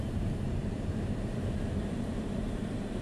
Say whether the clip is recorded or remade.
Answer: remade